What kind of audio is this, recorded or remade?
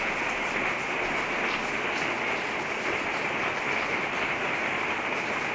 recorded